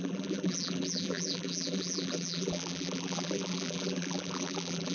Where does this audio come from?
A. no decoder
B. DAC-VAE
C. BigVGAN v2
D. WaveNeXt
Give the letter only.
C